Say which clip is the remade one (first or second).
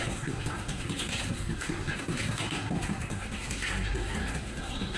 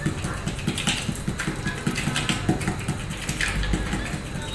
first